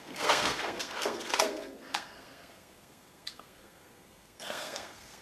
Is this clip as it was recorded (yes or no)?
no